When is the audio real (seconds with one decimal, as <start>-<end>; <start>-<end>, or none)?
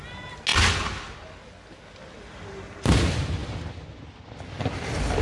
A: 0.0-5.2